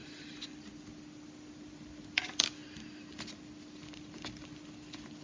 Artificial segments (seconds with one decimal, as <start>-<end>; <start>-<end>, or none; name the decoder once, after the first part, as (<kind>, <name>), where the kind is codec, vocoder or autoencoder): none